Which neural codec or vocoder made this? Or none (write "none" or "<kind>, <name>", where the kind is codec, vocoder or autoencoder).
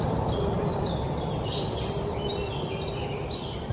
none